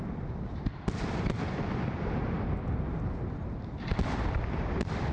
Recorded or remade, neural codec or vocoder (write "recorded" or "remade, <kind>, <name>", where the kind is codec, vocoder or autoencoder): recorded